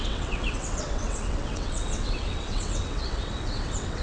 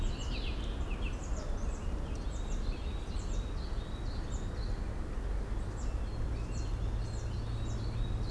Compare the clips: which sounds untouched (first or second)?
second